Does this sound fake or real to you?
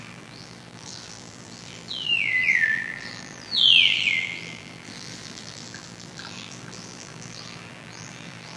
fake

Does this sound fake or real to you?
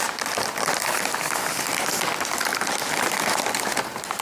real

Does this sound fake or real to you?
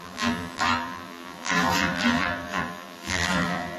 fake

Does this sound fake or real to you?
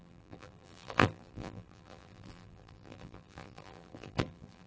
fake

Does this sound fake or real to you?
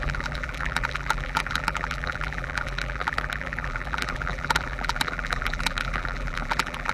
fake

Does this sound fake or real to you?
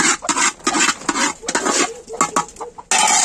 real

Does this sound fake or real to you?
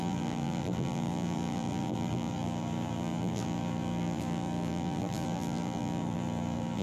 fake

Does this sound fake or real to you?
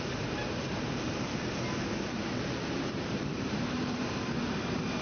fake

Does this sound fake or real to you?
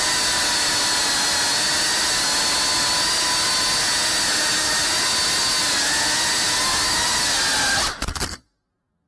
real